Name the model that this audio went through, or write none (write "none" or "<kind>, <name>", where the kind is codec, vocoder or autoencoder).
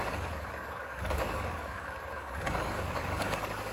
codec, DAC